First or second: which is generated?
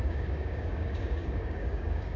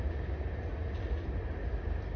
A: first